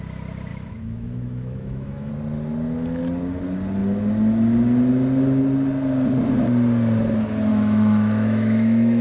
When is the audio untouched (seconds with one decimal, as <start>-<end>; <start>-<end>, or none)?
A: 0.0-0.5; 2.1-7.5